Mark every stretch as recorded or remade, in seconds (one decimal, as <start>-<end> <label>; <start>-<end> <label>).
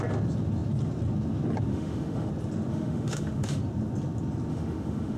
0.0-1.7 recorded; 1.7-2.3 remade; 2.3-2.7 recorded; 2.7-3.6 remade; 3.6-4.5 recorded; 4.5-5.2 remade